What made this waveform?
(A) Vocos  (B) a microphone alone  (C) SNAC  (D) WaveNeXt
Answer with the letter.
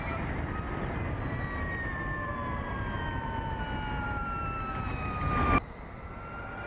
B